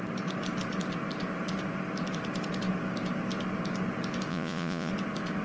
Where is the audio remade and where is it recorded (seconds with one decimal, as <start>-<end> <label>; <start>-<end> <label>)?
0.0-4.3 recorded; 4.3-4.9 remade; 4.9-5.4 recorded